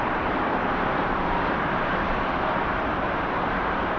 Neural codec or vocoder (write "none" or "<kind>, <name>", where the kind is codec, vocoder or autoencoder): vocoder, BigVGAN v2